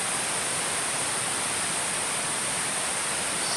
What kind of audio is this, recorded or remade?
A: recorded